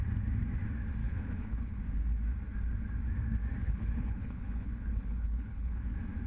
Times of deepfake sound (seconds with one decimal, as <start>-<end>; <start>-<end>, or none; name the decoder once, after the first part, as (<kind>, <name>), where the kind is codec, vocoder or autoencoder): 1.0-1.8 (codec, HILCodec); 3.6-5.8